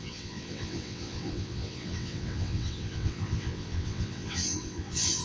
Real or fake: fake